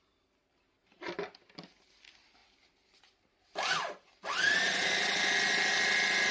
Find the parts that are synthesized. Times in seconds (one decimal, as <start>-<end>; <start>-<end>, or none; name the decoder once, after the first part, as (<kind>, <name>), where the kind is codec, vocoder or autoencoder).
none